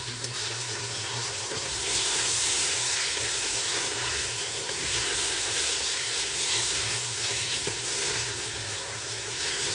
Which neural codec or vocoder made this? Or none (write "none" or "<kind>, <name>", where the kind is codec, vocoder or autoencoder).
codec, SNAC